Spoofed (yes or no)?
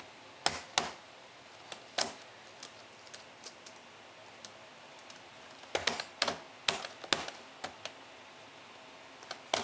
no